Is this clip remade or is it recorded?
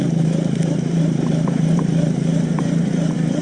remade